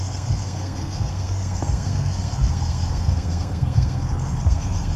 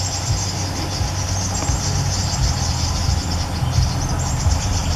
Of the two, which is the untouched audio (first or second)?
second